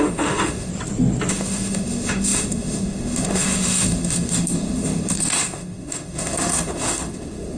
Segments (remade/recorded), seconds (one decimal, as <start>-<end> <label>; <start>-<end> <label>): 0.0-0.7 remade; 0.7-1.3 recorded; 1.3-7.6 remade